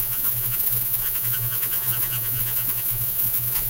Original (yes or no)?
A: no